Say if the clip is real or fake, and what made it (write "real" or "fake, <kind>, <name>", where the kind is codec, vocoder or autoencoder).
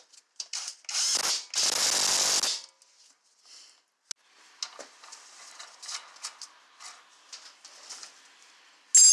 real